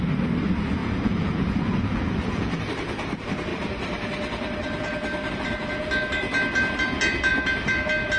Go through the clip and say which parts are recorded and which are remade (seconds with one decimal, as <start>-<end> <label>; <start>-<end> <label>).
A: 0.0-0.8 recorded; 0.8-2.6 remade; 2.6-8.2 recorded